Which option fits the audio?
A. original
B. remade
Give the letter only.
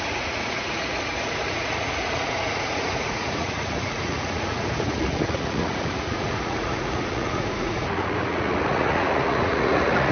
B